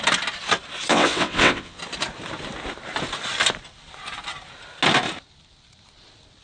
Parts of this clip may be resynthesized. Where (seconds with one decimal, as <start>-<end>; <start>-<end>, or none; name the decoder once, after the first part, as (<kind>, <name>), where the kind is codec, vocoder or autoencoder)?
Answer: 0.9-1.8 (vocoder, WaveNeXt)